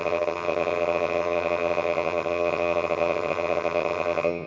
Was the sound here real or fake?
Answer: fake